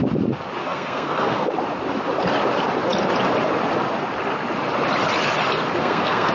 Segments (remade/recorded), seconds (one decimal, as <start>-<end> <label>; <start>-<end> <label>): 0.0-0.6 recorded; 0.6-1.5 remade; 1.5-5.8 recorded; 5.8-6.3 remade